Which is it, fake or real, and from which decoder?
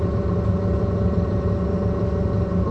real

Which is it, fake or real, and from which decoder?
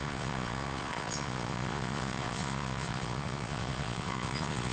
fake, vocoder, Vocos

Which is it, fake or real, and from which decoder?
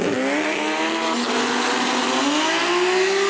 real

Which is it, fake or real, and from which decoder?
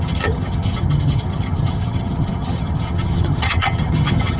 fake, vocoder, HiFi-GAN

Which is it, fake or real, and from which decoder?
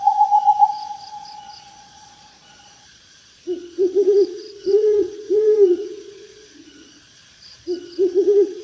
fake, vocoder, Vocos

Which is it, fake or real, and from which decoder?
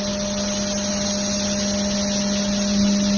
real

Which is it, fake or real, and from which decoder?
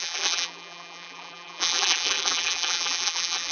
fake, vocoder, BigVGAN v2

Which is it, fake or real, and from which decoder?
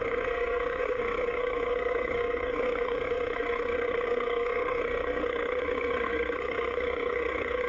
fake, codec, SNAC